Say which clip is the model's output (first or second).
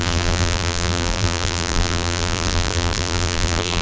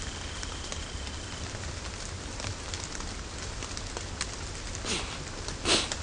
first